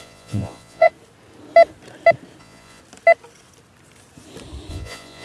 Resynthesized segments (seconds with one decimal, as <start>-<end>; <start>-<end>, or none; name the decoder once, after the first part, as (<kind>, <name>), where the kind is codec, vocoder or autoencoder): 0.0-0.9 (vocoder, Vocos); 2.4-2.8; 4.7-5.2